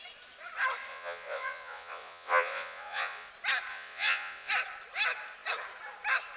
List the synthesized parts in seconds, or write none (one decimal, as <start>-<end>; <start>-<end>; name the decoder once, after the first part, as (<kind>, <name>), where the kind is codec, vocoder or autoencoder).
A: 0.9-3.3 (vocoder, Vocos); 3.7-4.5